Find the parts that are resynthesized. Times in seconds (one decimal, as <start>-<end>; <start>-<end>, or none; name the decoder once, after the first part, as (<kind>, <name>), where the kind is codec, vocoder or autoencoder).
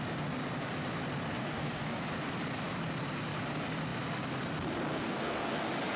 1.4-2.0 (codec, DAC); 4.9-5.6